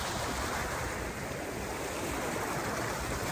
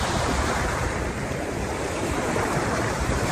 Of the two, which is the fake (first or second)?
second